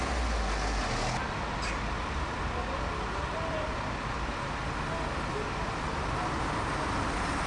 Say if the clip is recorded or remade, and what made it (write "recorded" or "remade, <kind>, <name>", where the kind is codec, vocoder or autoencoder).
recorded